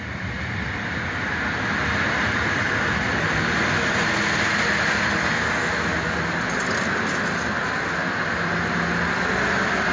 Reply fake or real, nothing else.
real